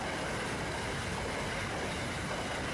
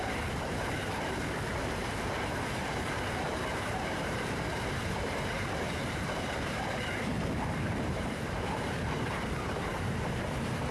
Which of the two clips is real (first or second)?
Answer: first